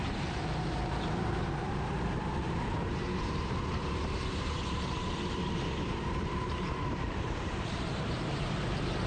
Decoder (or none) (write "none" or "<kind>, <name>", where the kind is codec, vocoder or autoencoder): vocoder, BigVGAN v2